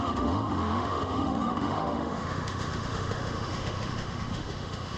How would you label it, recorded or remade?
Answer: remade